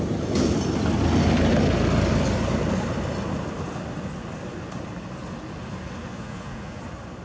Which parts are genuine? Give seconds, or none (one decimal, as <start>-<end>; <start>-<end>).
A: 0.0-6.1; 6.8-7.2